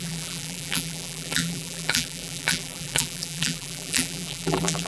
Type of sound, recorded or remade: remade